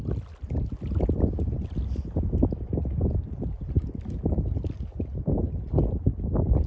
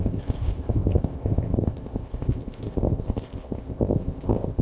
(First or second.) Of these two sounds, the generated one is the second